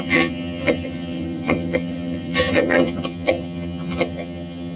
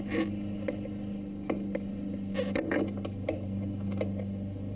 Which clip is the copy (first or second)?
first